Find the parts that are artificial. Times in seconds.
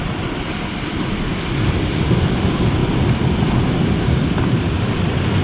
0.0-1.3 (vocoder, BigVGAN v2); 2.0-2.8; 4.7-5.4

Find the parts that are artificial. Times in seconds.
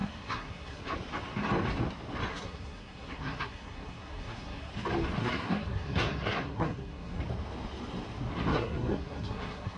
0.0-0.8 (codec, SNAC); 2.3-4.7; 5.2-7.2; 8.5-9.8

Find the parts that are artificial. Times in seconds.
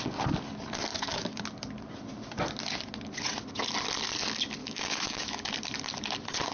0.9-1.4 (autoencoder, DAC-VAE); 4.6-5.5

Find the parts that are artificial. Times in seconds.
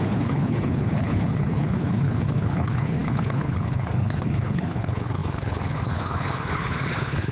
0.0-7.3 (codec, HILCodec)